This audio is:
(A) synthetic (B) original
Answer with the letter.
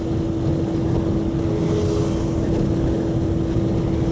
B